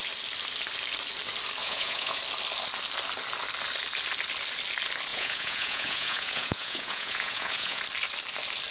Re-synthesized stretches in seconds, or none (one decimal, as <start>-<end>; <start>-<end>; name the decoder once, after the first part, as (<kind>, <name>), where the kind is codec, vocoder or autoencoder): 1.6-2.2 (vocoder, Vocos); 5.1-7.8